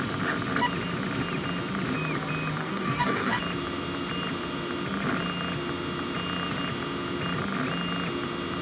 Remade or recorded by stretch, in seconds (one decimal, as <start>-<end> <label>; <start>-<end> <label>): 0.0-2.6 recorded; 2.6-3.4 remade; 3.4-8.6 recorded